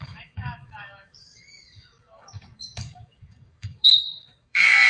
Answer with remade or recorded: remade